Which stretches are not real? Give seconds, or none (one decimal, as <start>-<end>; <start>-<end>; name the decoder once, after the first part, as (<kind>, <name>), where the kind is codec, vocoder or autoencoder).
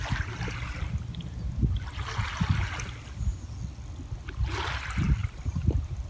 5.2-6.1 (vocoder, BigVGAN v2)